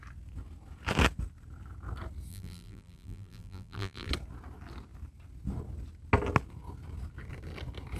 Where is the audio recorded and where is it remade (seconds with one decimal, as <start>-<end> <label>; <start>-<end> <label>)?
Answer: 0.0-2.3 recorded; 2.3-4.1 remade; 4.1-8.0 recorded

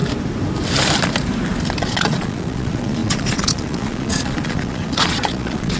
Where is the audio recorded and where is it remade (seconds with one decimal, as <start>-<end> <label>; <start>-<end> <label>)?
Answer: 0.0-1.8 recorded; 1.8-5.8 remade

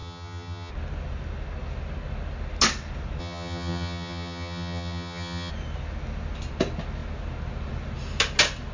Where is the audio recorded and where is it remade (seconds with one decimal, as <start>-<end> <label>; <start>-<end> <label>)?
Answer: 0.0-0.7 remade; 0.7-3.2 recorded; 3.2-5.5 remade; 5.5-8.7 recorded